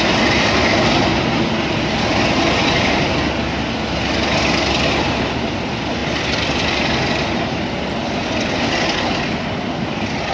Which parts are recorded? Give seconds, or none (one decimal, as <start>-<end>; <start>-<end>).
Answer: 0.0-10.3